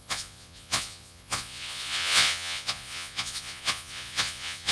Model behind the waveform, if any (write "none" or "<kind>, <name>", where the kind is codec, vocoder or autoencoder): vocoder, Vocos